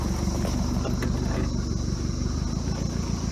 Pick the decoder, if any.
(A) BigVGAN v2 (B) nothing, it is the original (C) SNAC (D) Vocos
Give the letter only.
B